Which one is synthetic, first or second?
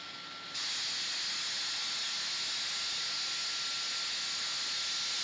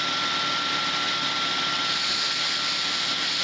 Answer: second